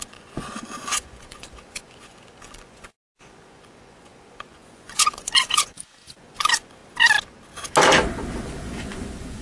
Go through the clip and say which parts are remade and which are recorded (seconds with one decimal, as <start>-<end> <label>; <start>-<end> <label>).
0.0-6.8 remade; 6.8-8.4 recorded; 8.4-9.4 remade